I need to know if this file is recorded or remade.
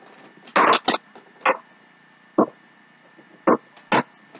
recorded